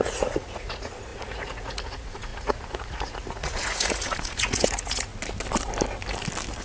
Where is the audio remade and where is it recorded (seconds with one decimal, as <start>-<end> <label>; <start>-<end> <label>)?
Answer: 0.0-5.1 remade; 5.1-6.6 recorded